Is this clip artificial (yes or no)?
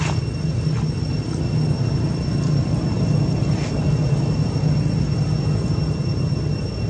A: no